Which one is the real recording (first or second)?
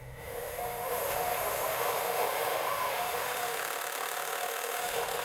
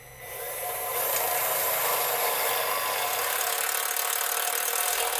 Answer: second